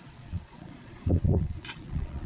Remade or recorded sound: remade